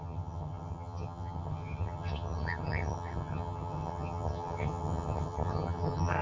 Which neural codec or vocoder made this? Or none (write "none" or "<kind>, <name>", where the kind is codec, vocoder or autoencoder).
vocoder, HiFi-GAN